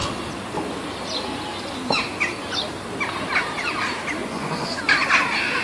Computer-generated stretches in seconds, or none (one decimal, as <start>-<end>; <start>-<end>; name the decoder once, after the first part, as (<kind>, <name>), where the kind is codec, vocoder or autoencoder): 4.2-4.8 (vocoder, Vocos)